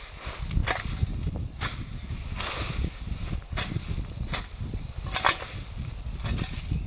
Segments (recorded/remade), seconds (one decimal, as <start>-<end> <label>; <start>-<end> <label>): 0.0-6.9 recorded